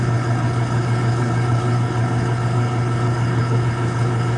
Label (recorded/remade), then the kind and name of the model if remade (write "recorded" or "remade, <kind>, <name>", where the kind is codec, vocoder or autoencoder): remade, codec, HILCodec